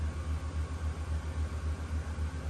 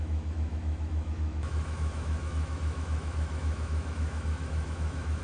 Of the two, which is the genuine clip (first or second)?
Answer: first